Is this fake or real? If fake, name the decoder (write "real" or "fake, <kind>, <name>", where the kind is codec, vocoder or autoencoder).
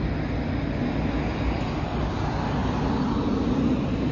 real